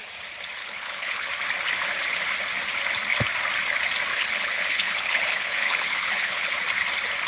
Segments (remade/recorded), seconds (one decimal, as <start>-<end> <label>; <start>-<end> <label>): 0.0-0.6 recorded; 0.6-1.3 remade; 1.3-4.1 recorded; 4.1-6.5 remade; 6.5-7.3 recorded